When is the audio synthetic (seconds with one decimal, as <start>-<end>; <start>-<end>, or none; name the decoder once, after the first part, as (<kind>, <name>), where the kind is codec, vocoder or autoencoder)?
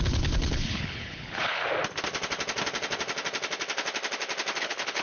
0.0-1.6 (codec, HILCodec); 4.6-5.0